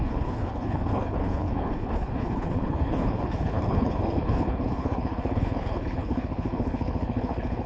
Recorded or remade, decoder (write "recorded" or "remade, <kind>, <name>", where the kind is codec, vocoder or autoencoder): remade, codec, HILCodec